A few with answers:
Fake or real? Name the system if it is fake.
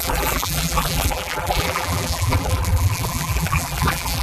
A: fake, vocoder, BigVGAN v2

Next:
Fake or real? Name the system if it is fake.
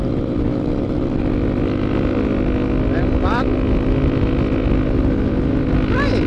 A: real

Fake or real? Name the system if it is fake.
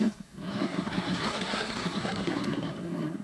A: fake, codec, SNAC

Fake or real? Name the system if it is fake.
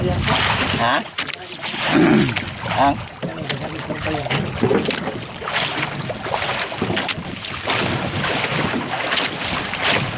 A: real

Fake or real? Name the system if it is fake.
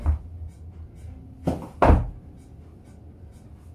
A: real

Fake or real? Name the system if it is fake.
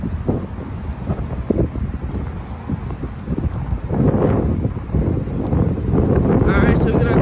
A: real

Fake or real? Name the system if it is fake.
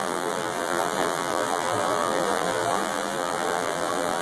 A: fake, vocoder, BigVGAN v2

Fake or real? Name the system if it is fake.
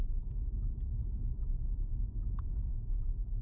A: fake, vocoder, BigVGAN v2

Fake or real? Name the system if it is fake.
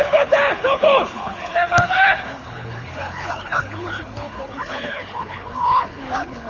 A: fake, codec, HILCodec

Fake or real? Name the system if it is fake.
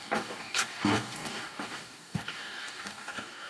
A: fake, codec, DAC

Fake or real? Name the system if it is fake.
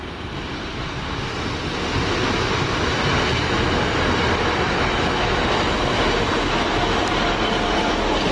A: real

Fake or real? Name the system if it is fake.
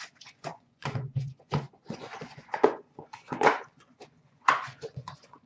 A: fake, vocoder, Vocos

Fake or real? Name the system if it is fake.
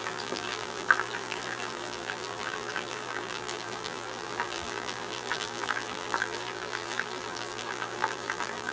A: fake, vocoder, BigVGAN v2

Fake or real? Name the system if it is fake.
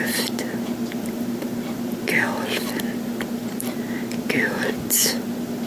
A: fake, vocoder, BigVGAN v2